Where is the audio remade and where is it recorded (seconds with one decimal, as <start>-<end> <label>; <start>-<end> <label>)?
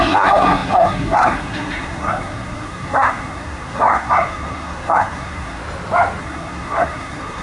0.0-5.6 remade; 5.6-6.2 recorded; 6.2-7.4 remade